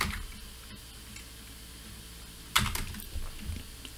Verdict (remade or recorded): recorded